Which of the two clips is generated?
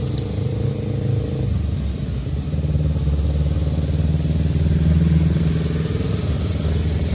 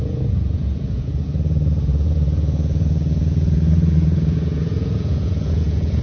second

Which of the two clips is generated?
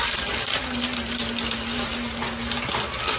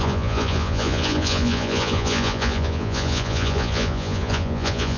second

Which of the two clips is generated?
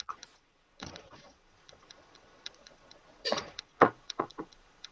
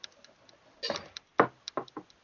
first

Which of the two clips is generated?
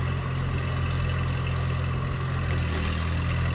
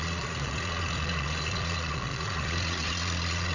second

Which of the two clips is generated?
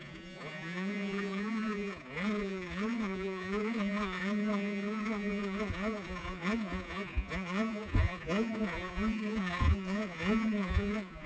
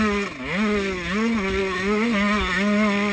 first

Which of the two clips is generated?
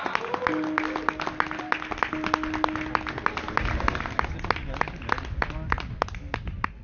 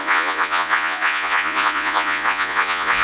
second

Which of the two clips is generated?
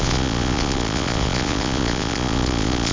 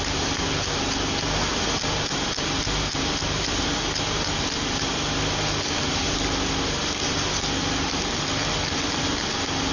first